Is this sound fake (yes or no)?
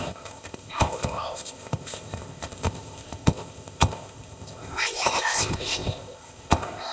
yes